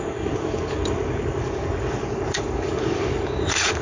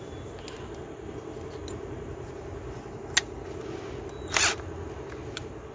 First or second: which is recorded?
second